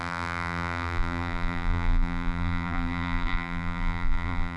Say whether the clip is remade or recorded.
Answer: remade